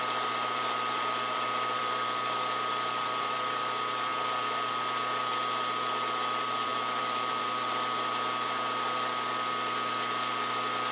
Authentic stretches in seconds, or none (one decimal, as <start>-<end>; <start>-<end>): 4.1-4.8